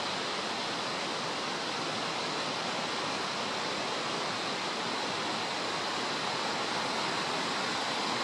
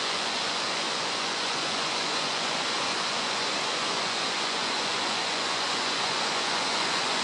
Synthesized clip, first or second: second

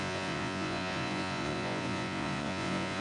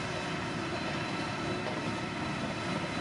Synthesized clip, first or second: first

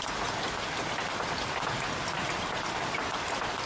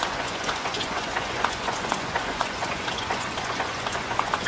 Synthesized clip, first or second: second